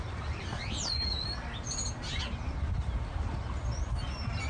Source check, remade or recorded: recorded